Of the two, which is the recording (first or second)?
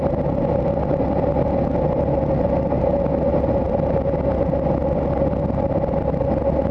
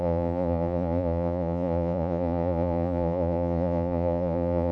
first